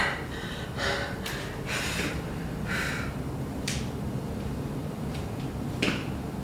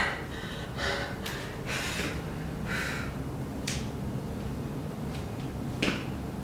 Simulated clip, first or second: first